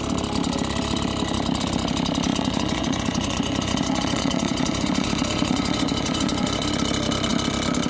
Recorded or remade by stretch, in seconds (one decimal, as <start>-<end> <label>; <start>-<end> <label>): 0.0-2.3 recorded; 2.3-6.7 remade; 6.7-7.9 recorded